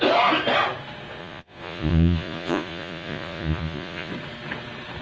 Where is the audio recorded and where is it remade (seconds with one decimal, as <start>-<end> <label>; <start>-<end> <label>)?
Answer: 0.0-1.2 recorded; 1.2-4.1 remade; 4.1-5.0 recorded